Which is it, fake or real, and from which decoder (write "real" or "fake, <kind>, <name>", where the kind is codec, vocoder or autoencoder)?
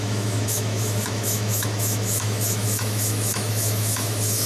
fake, autoencoder, DAC-VAE